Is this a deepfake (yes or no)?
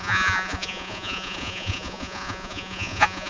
yes